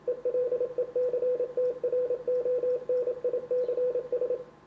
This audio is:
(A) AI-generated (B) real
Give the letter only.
A